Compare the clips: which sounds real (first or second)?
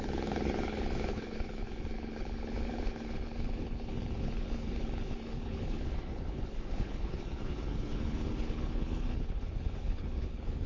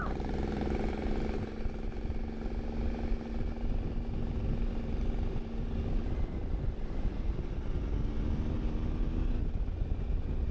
second